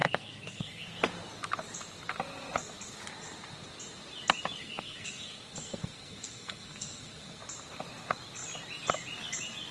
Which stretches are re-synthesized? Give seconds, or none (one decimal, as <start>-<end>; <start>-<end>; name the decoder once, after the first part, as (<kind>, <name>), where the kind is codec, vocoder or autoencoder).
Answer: 0.0-1.0 (codec, SNAC); 4.6-7.4